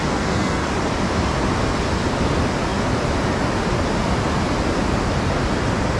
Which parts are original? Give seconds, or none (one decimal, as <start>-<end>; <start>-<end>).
0.7-6.0